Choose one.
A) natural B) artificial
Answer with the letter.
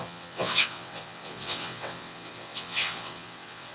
B